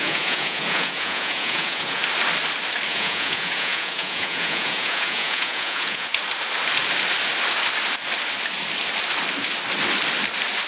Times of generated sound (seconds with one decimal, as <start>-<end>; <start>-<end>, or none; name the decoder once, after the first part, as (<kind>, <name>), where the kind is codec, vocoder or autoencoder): 0.0-2.0 (vocoder, Vocos); 2.9-6.1

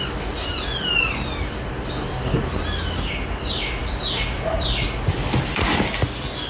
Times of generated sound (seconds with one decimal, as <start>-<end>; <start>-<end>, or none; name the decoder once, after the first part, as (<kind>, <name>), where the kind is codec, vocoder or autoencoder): none

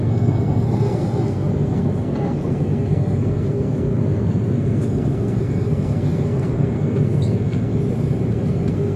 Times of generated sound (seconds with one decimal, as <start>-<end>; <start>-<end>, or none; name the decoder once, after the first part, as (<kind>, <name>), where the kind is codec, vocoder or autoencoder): 0.0-7.7 (codec, SNAC); 8.3-9.0

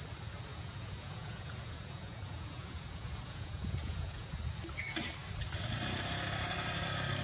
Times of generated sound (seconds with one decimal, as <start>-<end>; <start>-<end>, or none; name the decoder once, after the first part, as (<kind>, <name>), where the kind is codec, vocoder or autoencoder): 0.5-4.4 (vocoder, Vocos)

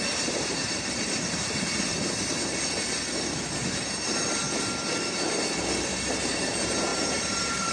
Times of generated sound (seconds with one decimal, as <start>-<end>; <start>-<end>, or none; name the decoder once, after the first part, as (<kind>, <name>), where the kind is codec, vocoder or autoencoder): 0.0-1.9 (vocoder, BigVGAN v2); 6.3-7.7